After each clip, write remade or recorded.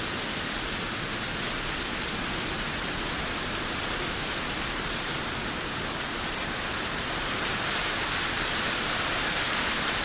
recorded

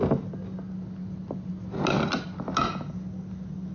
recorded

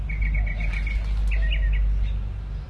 recorded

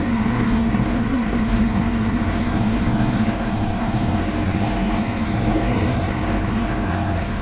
remade